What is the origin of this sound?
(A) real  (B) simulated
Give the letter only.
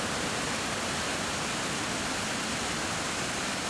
A